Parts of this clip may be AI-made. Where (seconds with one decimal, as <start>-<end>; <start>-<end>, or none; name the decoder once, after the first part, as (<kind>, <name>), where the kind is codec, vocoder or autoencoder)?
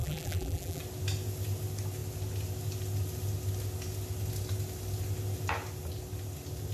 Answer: 0.0-0.8 (vocoder, BigVGAN v2)